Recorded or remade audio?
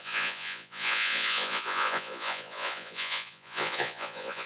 remade